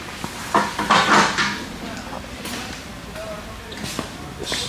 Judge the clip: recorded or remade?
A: recorded